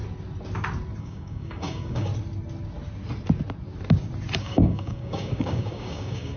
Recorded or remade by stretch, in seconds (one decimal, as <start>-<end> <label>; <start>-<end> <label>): 0.0-1.0 recorded; 1.0-2.1 remade; 2.1-4.4 recorded; 4.4-6.4 remade